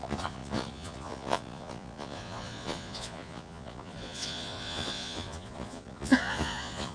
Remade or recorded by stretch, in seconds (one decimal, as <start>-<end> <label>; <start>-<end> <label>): 0.0-6.9 remade